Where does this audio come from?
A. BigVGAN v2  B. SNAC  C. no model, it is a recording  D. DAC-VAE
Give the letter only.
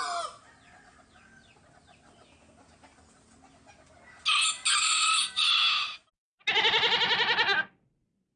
C